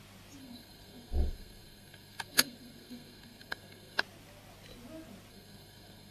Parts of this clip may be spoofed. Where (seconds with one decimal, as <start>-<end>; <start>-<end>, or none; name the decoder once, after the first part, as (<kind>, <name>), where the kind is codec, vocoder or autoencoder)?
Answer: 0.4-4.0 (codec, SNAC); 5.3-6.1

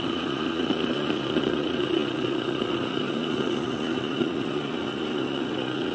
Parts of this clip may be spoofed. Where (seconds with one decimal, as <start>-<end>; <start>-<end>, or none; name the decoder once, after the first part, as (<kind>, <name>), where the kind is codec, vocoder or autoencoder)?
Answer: 0.0-5.9 (vocoder, Vocos)

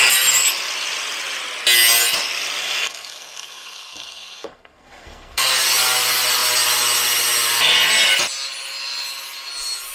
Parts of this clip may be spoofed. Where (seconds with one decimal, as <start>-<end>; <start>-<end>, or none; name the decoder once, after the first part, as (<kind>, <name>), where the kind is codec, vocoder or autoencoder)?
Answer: 2.6-5.5 (codec, SNAC)

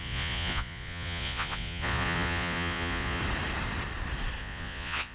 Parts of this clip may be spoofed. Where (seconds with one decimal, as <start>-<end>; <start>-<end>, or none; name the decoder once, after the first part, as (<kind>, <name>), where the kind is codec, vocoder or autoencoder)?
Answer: 0.0-3.2 (vocoder, Vocos); 4.4-5.1

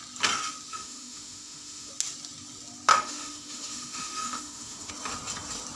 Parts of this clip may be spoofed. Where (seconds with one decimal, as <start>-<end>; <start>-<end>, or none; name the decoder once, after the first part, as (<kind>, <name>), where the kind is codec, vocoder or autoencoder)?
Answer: 0.7-1.9 (autoencoder, DAC-VAE); 2.9-4.9

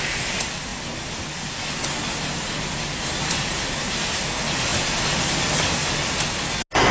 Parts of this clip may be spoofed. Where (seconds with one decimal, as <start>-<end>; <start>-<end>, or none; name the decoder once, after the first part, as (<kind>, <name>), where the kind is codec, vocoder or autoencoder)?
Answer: none